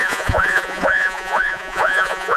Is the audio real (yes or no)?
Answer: no